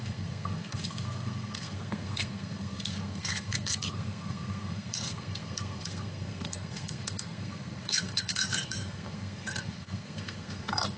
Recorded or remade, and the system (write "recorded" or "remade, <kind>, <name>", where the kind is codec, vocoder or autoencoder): remade, codec, SNAC